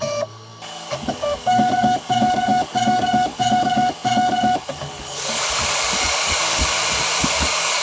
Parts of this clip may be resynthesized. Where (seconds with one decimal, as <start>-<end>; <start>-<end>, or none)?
0.0-6.6; 7.2-7.8